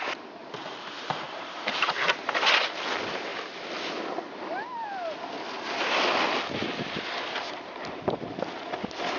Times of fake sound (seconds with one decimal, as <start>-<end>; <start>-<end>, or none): 0.4-2.4